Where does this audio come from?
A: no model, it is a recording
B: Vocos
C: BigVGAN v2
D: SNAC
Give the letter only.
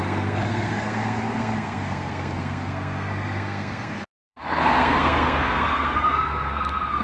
D